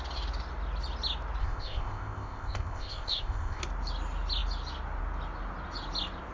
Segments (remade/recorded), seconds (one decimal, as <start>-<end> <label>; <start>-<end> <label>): 0.0-1.4 recorded; 1.4-3.6 remade; 3.6-6.3 recorded